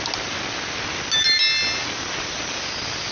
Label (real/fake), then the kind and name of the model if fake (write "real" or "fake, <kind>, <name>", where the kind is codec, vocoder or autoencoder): real